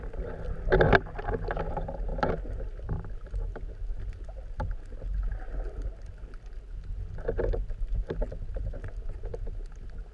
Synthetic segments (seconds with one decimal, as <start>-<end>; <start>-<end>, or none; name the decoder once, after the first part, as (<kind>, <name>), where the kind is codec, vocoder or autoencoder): none